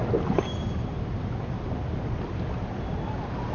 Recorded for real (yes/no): yes